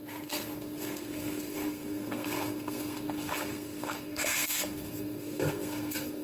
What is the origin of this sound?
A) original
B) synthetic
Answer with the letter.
B